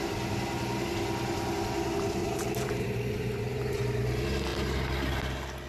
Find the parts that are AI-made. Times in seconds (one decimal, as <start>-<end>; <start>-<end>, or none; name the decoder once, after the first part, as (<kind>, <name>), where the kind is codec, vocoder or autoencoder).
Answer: 2.2-3.4 (vocoder, BigVGAN v2)